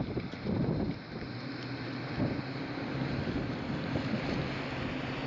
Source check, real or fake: real